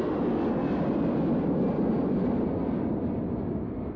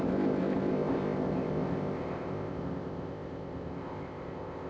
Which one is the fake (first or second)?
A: second